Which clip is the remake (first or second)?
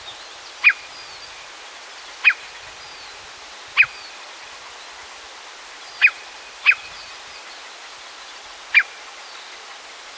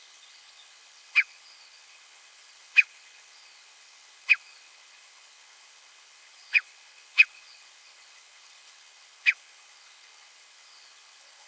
second